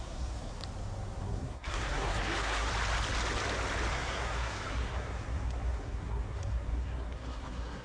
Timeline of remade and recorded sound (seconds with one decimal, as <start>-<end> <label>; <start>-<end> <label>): 0.0-0.6 remade; 0.6-1.2 recorded; 1.2-2.7 remade; 2.7-3.9 recorded; 3.9-7.8 remade

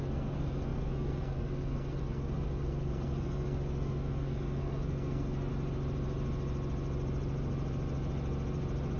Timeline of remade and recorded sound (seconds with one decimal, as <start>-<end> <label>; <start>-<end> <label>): 0.0-5.5 remade; 5.5-9.0 recorded

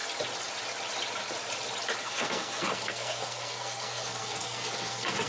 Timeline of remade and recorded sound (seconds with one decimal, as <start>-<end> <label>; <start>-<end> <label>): 0.0-2.0 recorded; 2.0-5.3 remade

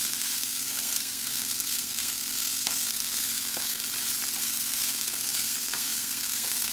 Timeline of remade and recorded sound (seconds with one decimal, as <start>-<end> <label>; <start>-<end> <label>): 0.0-3.8 remade; 3.8-4.4 recorded; 4.4-6.7 remade

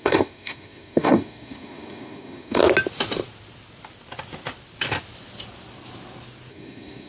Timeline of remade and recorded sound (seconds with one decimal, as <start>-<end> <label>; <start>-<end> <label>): 0.0-2.6 remade; 2.6-6.5 recorded; 6.5-7.1 remade

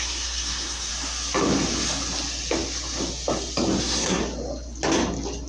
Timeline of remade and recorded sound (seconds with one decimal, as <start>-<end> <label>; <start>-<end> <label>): 0.0-0.9 remade; 0.9-3.8 recorded; 3.8-4.2 remade; 4.2-5.5 recorded

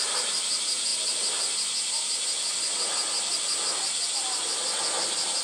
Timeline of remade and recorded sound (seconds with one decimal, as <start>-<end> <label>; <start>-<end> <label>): 0.0-5.4 recorded